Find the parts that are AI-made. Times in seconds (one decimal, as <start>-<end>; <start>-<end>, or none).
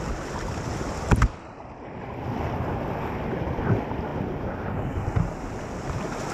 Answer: none